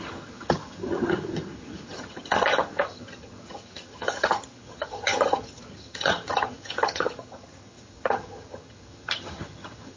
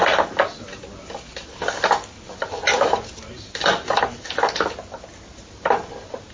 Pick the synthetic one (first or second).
first